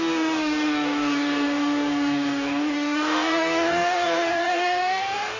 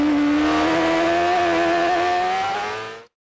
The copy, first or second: first